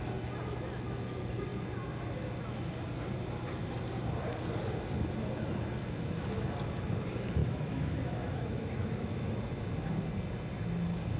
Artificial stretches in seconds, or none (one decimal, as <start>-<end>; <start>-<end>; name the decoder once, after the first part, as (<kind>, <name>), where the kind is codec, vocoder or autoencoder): 7.4-9.4 (autoencoder, DAC-VAE)